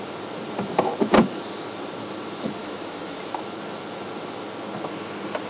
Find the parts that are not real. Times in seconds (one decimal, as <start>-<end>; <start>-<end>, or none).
2.6-3.2